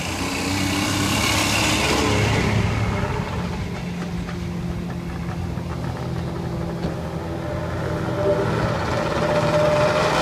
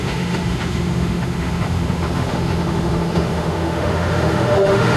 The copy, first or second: second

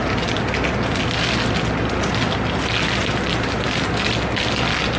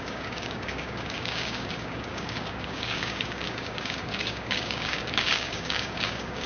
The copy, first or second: second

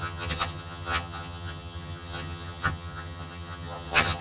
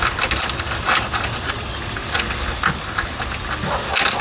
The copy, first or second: first